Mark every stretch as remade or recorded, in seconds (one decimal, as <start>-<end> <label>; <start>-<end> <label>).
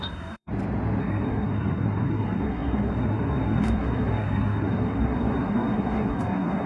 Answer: 0.0-0.5 remade; 0.5-1.0 recorded; 1.0-6.7 remade